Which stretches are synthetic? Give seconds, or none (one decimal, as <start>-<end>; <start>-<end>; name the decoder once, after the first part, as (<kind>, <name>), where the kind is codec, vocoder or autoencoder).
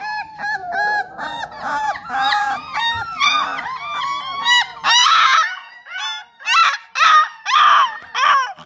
1.3-2.8 (vocoder, Vocos); 5.0-6.0